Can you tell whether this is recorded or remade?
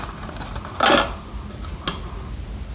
recorded